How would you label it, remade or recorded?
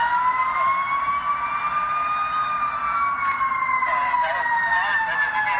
recorded